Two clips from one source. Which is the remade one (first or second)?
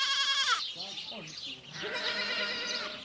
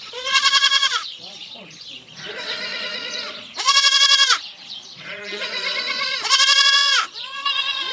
second